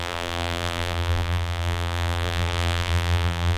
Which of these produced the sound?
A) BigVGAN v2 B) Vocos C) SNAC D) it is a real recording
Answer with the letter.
A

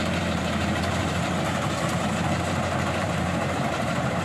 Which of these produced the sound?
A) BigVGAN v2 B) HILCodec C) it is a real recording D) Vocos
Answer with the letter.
A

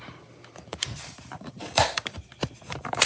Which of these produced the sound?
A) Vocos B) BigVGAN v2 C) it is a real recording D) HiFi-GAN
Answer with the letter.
B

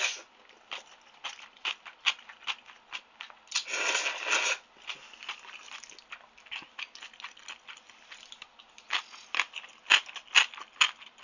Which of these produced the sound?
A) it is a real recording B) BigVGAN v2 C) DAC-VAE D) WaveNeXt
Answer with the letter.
A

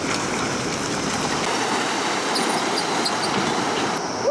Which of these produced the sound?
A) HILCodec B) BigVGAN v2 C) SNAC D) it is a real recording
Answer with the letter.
D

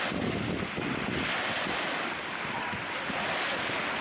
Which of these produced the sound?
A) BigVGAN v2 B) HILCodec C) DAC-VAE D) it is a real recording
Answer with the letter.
D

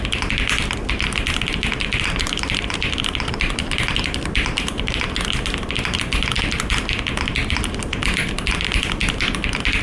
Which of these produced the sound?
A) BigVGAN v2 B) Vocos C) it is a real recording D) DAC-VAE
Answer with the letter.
A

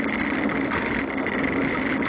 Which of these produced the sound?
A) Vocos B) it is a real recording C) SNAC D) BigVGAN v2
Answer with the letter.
B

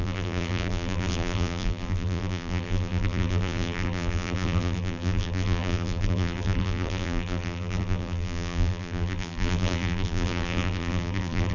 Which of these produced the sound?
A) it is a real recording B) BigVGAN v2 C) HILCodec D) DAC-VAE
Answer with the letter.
B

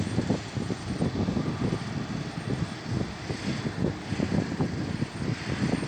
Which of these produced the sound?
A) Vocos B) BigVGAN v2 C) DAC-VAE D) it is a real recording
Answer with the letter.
D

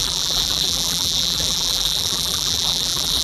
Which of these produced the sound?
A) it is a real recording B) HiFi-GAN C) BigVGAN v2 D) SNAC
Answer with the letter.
C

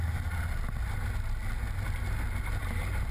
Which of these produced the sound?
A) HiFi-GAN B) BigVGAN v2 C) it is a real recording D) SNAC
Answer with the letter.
C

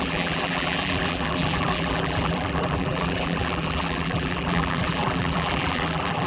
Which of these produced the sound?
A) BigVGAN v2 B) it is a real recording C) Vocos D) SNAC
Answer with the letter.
A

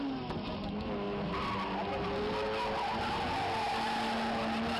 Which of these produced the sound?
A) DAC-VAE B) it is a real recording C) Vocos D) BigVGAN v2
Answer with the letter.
B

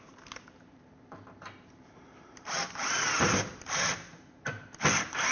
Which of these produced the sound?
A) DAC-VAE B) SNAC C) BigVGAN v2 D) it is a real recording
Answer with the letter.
C